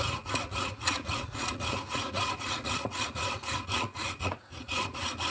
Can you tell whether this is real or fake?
fake